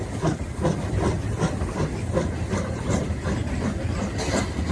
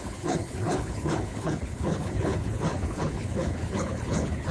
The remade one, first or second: second